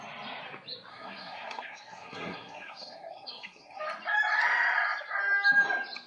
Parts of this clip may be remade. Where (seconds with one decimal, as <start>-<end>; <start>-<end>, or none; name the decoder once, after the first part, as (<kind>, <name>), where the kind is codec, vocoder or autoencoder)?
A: 0.9-3.8 (codec, SNAC)